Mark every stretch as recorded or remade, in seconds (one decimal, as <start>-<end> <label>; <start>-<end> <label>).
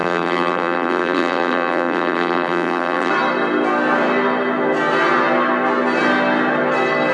0.0-3.1 remade; 3.1-7.1 recorded